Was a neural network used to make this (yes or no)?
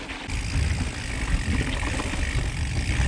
no